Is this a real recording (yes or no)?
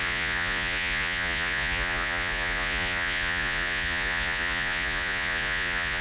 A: no